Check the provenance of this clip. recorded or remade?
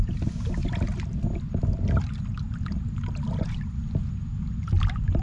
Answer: recorded